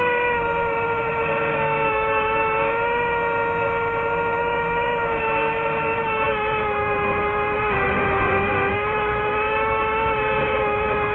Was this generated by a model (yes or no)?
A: yes